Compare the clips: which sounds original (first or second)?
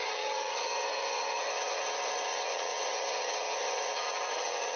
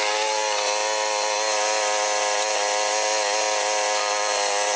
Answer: second